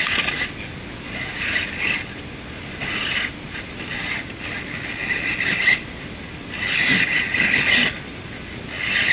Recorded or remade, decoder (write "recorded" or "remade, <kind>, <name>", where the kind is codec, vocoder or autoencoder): recorded